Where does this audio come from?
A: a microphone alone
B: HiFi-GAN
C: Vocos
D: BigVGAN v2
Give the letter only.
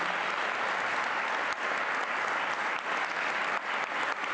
A